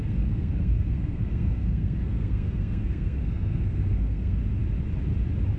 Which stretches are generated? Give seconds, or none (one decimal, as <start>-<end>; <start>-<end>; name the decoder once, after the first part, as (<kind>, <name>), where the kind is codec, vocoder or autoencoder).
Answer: 0.0-4.4 (codec, SNAC)